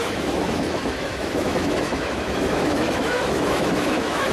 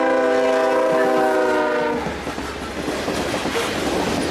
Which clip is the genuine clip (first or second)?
second